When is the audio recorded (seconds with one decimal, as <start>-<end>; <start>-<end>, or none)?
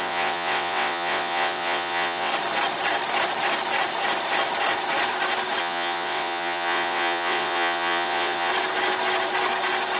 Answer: 2.3-5.6; 8.5-10.0